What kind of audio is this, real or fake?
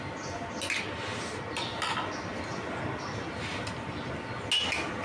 real